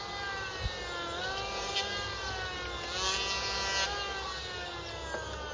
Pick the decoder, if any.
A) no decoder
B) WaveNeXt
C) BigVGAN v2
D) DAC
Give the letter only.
A